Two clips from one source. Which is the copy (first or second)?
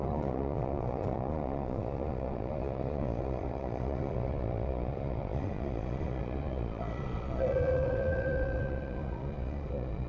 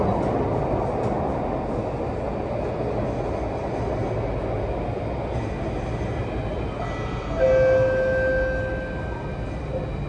first